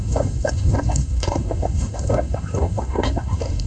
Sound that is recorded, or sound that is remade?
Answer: remade